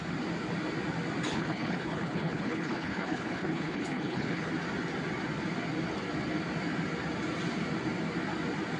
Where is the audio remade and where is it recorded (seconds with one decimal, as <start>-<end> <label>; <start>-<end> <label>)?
0.0-1.3 recorded; 1.3-4.5 remade; 4.5-8.8 recorded